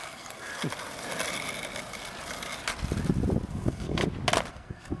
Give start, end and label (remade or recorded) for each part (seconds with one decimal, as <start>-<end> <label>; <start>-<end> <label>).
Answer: 0.0-0.5 remade; 0.5-3.5 recorded; 3.5-4.0 remade; 4.0-4.5 recorded; 4.5-5.0 remade